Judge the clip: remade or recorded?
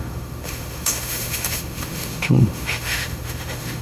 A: remade